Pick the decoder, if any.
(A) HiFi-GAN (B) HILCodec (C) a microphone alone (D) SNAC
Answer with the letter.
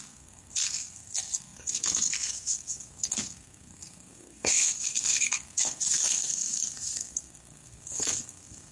D